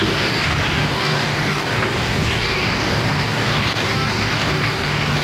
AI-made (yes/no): yes